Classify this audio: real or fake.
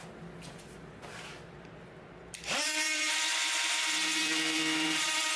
fake